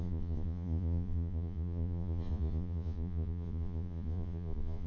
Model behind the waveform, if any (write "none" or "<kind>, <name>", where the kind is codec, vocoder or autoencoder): vocoder, Vocos